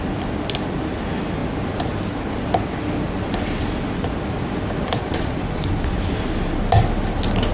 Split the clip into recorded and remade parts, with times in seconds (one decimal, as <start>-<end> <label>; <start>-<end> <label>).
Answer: 0.0-5.0 recorded; 5.0-6.1 remade; 6.1-7.5 recorded